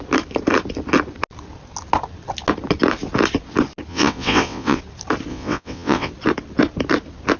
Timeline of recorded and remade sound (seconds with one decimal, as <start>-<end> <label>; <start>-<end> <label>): 0.0-3.9 recorded; 3.9-4.8 remade; 4.8-5.3 recorded; 5.3-6.1 remade; 6.1-7.4 recorded